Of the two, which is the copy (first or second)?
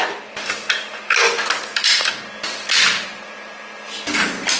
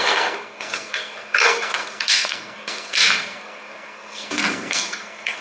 second